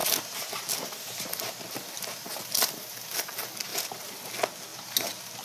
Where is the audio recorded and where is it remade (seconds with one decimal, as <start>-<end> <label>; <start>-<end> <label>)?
0.0-3.2 remade; 3.2-3.7 recorded; 3.7-4.3 remade; 4.3-4.7 recorded; 4.7-5.4 remade